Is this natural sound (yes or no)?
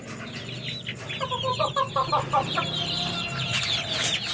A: yes